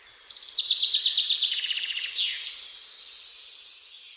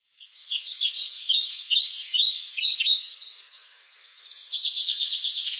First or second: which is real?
first